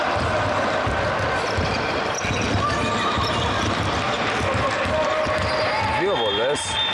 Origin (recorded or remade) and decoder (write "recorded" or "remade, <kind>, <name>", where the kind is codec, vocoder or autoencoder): recorded